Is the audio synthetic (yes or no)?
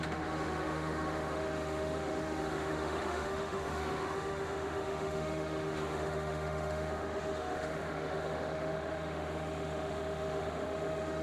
yes